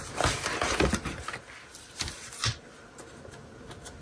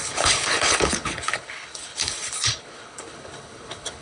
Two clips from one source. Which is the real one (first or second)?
first